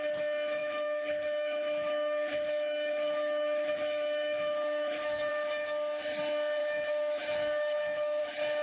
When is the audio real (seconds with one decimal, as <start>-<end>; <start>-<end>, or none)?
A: 0.0-0.6; 5.3-6.6; 8.2-8.6